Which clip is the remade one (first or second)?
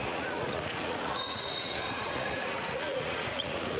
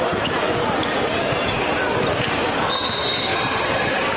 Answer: first